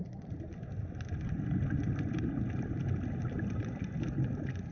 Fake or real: real